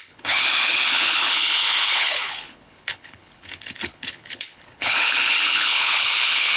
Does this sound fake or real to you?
fake